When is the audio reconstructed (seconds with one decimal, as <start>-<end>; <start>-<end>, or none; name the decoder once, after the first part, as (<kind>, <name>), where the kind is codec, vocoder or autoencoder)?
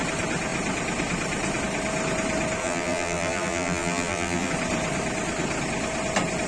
2.6-4.5 (vocoder, BigVGAN v2)